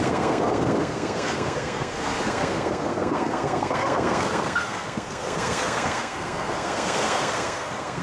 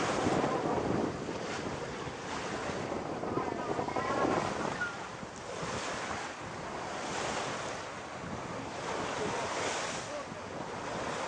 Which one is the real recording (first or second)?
second